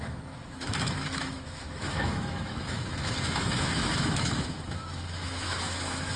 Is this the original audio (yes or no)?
no